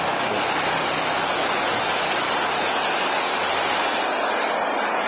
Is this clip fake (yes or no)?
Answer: no